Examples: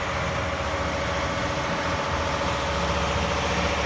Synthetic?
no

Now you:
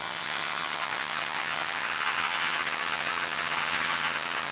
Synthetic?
yes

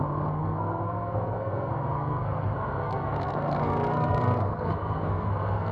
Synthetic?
yes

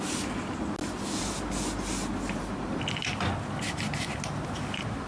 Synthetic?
no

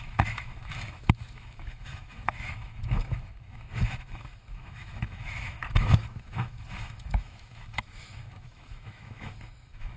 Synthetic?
yes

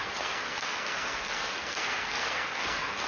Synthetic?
yes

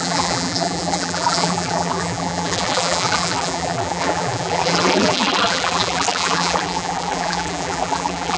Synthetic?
yes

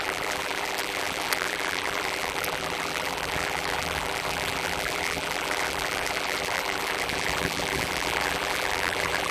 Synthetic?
yes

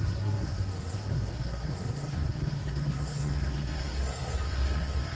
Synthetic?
yes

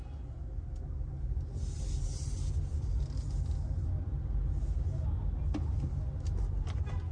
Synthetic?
no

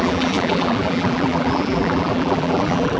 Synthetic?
yes